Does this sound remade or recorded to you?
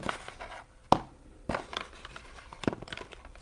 recorded